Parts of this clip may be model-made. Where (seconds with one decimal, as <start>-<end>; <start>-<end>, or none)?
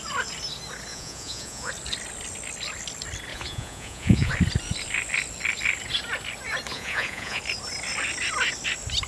0.9-1.7; 3.3-4.3; 6.7-7.4